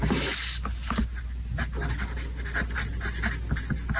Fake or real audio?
real